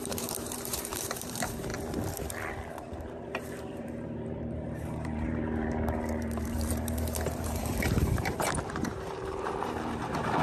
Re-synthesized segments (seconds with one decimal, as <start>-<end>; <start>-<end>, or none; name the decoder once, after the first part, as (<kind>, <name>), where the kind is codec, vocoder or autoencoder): 0.0-1.7 (vocoder, BigVGAN v2); 2.5-10.4